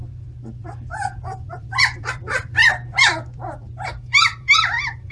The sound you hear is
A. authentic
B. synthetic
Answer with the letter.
B